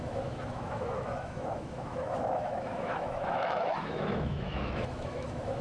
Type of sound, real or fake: fake